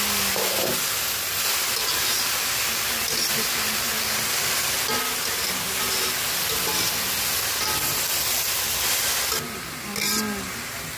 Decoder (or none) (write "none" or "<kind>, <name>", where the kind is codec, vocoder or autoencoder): none